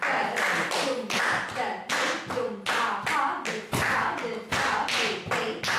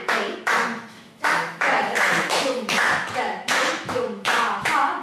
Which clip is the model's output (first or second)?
second